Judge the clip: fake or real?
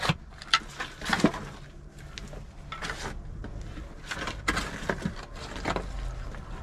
real